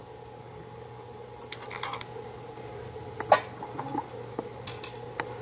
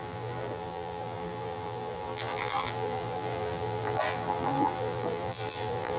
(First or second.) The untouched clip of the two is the first